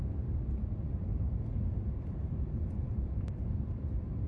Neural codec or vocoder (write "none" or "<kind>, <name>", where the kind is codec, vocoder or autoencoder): vocoder, BigVGAN v2